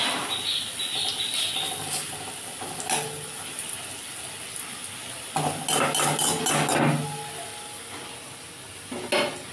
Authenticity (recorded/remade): recorded